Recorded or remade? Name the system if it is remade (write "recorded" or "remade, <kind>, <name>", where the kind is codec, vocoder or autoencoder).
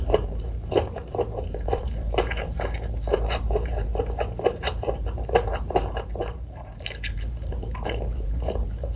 remade, vocoder, BigVGAN v2